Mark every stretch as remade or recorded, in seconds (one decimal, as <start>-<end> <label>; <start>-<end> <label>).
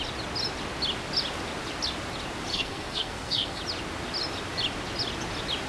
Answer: 0.0-2.5 recorded; 2.5-3.6 remade; 3.6-5.7 recorded